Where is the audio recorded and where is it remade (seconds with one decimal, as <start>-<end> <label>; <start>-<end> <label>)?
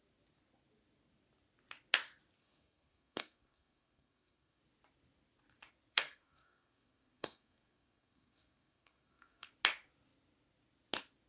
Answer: 0.0-2.4 recorded; 2.4-4.6 remade; 4.6-5.9 recorded; 5.9-9.5 remade; 9.5-11.3 recorded